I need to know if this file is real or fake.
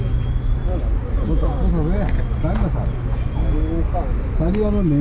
real